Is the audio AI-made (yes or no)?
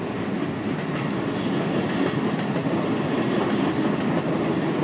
no